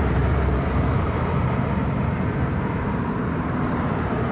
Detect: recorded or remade remade